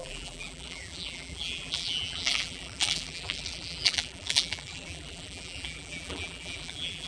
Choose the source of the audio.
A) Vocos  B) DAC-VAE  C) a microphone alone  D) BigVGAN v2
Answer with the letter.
D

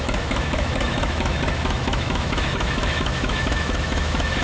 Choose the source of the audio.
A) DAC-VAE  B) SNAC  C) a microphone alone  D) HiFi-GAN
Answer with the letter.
A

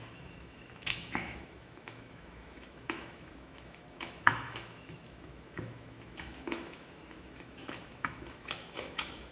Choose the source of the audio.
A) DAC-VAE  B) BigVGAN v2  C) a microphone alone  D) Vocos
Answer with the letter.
A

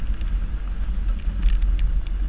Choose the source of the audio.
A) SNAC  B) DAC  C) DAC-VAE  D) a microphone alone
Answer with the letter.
D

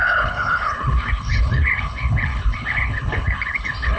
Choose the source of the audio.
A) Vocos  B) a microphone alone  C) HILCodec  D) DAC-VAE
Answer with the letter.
C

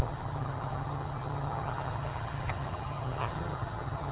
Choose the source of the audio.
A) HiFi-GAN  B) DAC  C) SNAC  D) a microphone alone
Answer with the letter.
A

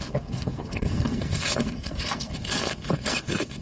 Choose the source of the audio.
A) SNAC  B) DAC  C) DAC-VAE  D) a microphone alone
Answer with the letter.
A